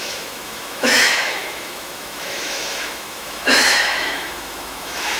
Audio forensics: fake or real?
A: fake